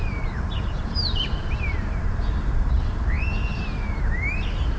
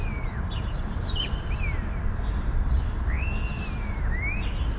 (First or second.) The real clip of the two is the second